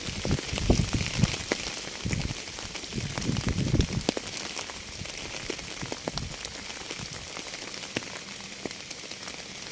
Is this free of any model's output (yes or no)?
yes